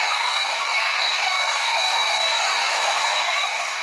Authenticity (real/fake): fake